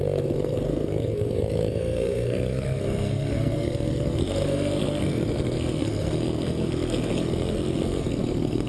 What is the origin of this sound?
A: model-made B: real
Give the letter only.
A